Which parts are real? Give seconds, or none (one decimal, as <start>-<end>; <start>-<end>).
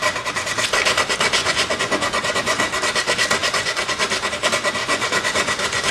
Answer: 0.0-1.4; 2.6-3.4; 4.0-4.8